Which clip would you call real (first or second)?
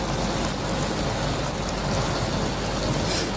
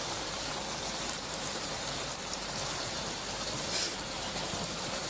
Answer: first